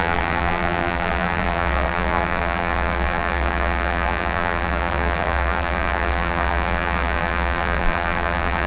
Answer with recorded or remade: remade